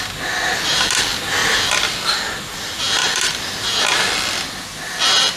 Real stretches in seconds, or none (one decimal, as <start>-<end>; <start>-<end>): 0.0-1.4; 2.0-3.0